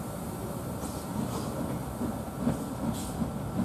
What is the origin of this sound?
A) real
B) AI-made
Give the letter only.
A